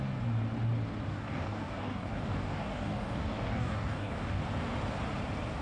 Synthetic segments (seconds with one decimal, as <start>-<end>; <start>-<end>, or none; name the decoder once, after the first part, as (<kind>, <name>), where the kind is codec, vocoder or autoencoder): 1.1-4.4 (codec, DAC)